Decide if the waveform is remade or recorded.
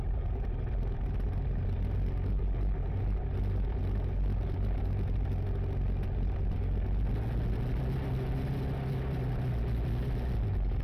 recorded